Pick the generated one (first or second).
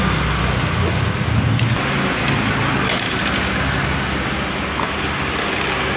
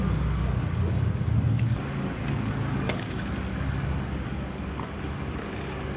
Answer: second